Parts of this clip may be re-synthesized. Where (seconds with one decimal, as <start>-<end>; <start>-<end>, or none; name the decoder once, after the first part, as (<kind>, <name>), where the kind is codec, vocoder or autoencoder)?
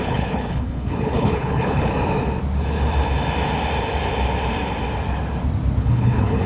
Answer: 0.0-1.9 (codec, HILCodec); 5.8-6.5